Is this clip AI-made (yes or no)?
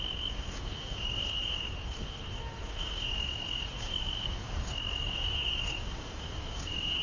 yes